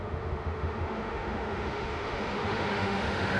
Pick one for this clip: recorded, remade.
remade